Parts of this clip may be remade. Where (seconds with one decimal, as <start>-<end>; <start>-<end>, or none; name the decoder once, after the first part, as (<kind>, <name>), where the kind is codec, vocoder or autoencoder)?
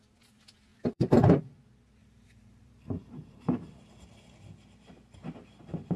0.7-1.5 (vocoder, BigVGAN v2); 2.0-3.7